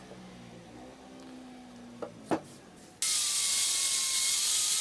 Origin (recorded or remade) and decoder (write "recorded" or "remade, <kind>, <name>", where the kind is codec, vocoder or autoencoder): recorded